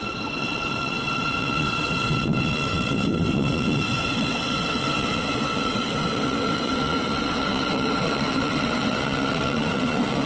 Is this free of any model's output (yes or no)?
no